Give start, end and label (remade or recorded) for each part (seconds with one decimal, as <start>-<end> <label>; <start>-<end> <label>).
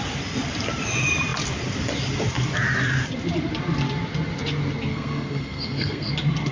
0.0-4.9 recorded; 4.9-6.1 remade; 6.1-6.5 recorded